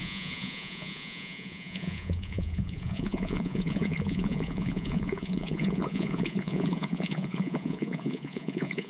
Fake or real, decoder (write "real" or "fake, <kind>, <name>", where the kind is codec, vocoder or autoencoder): fake, vocoder, Vocos